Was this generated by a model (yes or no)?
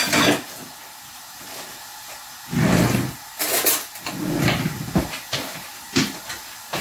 no